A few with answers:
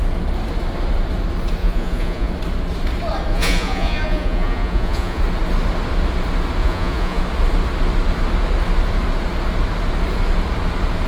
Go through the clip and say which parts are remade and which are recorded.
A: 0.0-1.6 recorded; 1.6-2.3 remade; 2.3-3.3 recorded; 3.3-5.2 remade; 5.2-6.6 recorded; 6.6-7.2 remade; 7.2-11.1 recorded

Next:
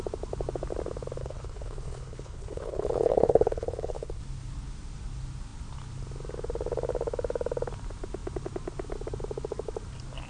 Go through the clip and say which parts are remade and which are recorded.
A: 0.0-1.2 recorded; 1.2-4.2 remade; 4.2-10.3 recorded